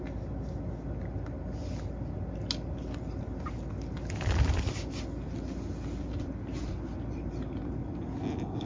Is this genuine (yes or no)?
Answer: yes